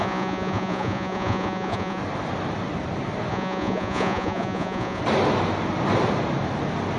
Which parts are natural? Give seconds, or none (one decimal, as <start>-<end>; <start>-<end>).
2.0-3.3; 5.0-7.0